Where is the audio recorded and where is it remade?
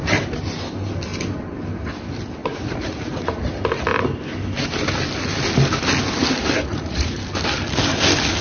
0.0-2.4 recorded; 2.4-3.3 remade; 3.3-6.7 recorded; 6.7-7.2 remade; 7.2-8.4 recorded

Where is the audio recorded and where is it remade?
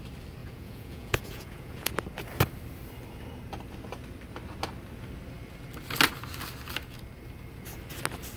0.0-0.4 recorded; 0.4-1.9 remade; 1.9-8.4 recorded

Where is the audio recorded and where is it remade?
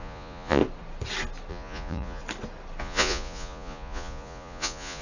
0.0-0.6 remade; 0.6-1.5 recorded; 1.5-2.2 remade; 2.2-2.8 recorded; 2.8-5.0 remade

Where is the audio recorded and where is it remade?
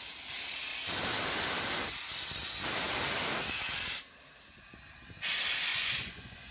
0.0-5.7 recorded; 5.7-6.5 remade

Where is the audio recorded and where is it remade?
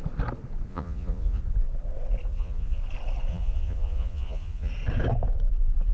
0.0-0.7 recorded; 0.7-1.4 remade; 1.4-2.3 recorded; 2.3-2.8 remade; 2.8-3.3 recorded; 3.3-4.7 remade; 4.7-5.9 recorded